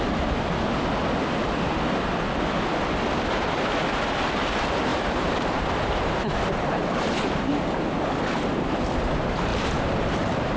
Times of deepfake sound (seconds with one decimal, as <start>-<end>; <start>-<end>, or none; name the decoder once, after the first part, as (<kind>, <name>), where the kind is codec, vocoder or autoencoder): 4.9-7.4 (vocoder, BigVGAN v2); 9.5-10.2